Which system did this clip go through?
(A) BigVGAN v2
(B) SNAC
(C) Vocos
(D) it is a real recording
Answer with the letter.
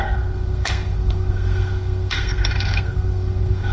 B